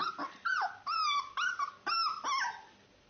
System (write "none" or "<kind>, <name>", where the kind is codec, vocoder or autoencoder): none